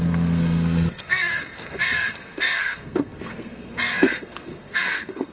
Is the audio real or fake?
fake